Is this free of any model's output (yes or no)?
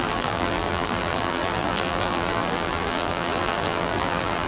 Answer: no